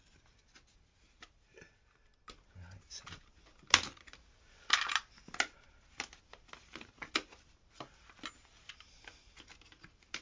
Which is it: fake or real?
real